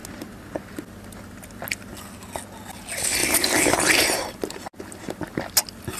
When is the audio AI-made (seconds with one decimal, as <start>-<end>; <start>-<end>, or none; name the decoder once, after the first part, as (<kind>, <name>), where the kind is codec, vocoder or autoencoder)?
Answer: 3.2-4.7 (vocoder, BigVGAN v2)